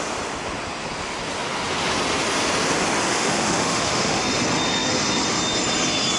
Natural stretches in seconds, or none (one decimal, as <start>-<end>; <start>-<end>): 0.0-3.1; 4.2-6.2